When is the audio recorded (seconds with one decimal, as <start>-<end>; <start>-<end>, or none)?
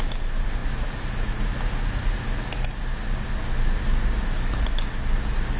0.0-5.6